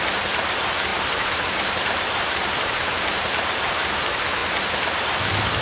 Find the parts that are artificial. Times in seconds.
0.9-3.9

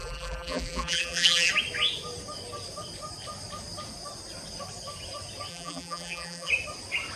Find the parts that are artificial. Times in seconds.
0.0-1.5; 5.5-6.5

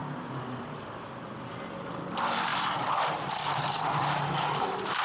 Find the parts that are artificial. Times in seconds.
0.0-2.5

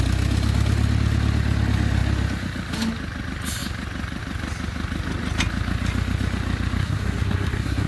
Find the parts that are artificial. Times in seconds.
6.8-7.9

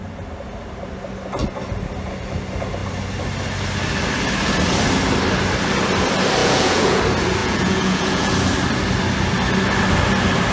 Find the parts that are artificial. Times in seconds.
6.4-7.0; 7.4-8.3

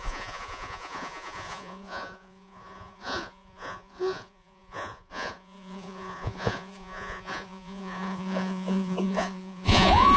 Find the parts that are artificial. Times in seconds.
0.0-10.2

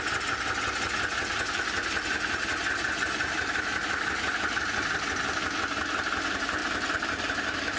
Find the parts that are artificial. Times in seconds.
none

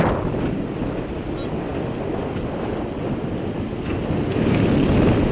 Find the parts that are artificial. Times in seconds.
none